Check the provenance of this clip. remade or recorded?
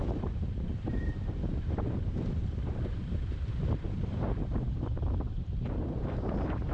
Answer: remade